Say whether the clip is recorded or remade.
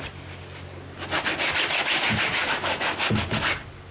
recorded